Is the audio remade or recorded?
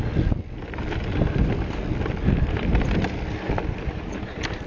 recorded